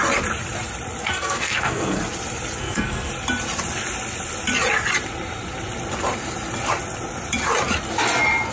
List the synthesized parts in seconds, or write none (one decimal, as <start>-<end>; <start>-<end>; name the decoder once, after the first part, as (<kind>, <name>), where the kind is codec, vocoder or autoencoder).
1.0-2.0 (codec, SNAC); 2.6-3.1